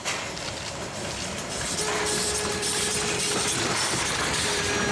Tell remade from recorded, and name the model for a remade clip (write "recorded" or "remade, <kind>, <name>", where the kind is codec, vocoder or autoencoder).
remade, vocoder, BigVGAN v2